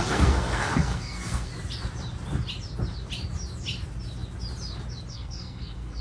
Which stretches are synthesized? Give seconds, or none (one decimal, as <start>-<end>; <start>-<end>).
0.0-1.5; 5.1-6.0